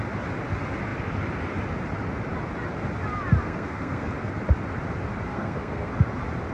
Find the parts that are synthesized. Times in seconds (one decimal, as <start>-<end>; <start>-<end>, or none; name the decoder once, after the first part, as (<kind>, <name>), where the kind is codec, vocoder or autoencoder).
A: 3.4-4.1 (codec, SNAC); 5.3-5.9